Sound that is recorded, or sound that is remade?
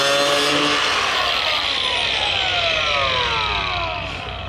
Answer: recorded